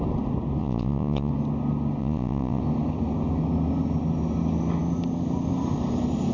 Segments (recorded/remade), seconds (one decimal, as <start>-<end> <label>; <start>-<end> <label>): 0.0-0.6 recorded; 0.6-1.3 remade; 1.3-2.0 recorded; 2.0-2.6 remade; 2.6-6.3 recorded